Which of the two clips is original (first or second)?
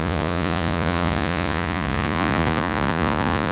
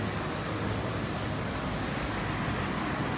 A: second